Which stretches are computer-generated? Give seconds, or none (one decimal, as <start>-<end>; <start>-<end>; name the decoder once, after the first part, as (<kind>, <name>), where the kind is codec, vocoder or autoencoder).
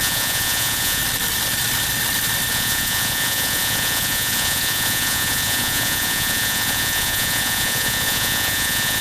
0.0-1.0 (vocoder, Vocos); 2.5-9.0